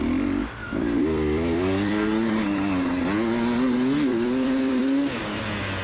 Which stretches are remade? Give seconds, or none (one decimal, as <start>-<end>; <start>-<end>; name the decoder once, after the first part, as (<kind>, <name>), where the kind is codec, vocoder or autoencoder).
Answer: 0.6-2.3 (vocoder, BigVGAN v2); 4.1-4.8